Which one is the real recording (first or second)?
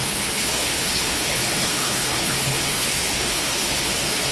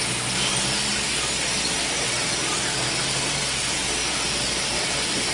second